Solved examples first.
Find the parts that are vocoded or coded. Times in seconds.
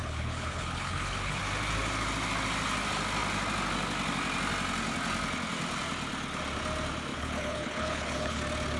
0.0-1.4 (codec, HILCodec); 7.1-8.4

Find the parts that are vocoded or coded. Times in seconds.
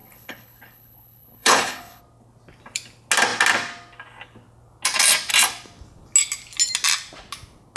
0.0-2.0 (codec, HILCodec)